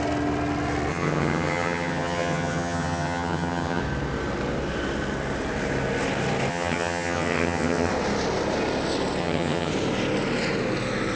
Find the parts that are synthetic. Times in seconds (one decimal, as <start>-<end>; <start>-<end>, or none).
0.9-3.8; 6.5-7.9; 9.2-9.7